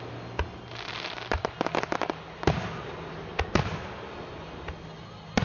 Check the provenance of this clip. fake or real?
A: real